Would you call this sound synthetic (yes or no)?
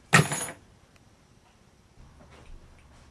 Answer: no